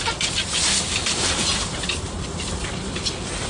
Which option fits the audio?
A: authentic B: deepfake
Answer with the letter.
A